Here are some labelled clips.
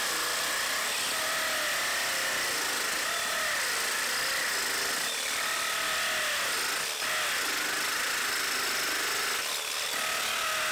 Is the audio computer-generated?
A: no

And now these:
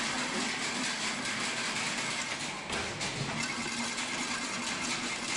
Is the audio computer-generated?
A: no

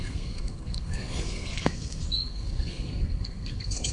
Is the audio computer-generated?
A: yes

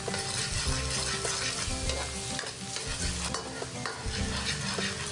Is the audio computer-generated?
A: no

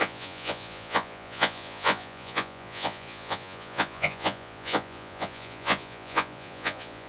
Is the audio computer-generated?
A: yes